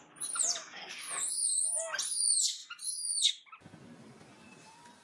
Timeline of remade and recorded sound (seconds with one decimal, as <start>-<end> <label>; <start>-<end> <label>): 0.0-5.0 recorded